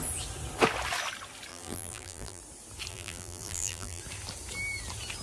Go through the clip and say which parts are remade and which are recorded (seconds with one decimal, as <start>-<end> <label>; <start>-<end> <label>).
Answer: 0.0-1.5 recorded; 1.5-2.4 remade; 2.4-2.9 recorded; 2.9-4.0 remade; 4.0-5.2 recorded

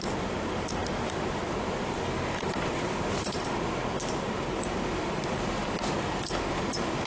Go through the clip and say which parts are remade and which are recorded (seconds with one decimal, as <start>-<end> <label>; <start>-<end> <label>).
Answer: 0.0-7.1 remade

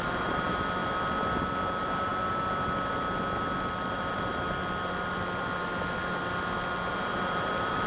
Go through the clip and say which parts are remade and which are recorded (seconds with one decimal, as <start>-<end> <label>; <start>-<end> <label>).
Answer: 0.0-0.8 remade; 0.8-1.6 recorded; 1.6-2.1 remade; 2.1-3.9 recorded; 3.9-4.3 remade; 4.3-6.9 recorded; 6.9-7.9 remade

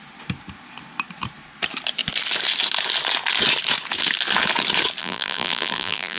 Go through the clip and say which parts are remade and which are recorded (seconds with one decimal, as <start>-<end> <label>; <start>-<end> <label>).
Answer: 0.0-5.0 recorded; 5.0-6.2 remade

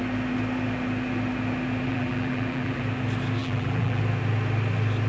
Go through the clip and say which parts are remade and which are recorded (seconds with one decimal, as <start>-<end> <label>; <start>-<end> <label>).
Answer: 0.0-1.9 recorded; 1.9-2.8 remade; 2.8-3.4 recorded; 3.4-4.0 remade; 4.0-5.1 recorded

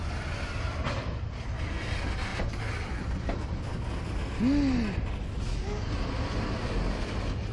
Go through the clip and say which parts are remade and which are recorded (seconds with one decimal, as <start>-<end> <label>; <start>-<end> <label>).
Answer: 0.0-2.3 recorded; 2.3-2.9 remade; 2.9-7.5 recorded